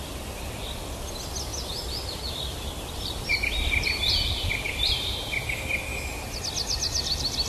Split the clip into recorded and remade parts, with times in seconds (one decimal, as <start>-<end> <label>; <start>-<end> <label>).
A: 0.0-1.5 recorded; 1.5-5.1 remade; 5.1-7.5 recorded